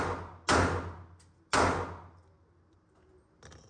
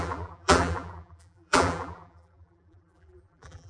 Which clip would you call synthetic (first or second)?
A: second